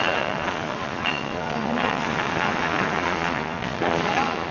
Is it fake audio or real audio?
fake